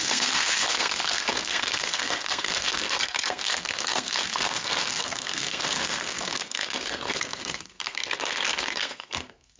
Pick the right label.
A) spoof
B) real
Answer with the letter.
A